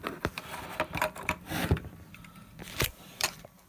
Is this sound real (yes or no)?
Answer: no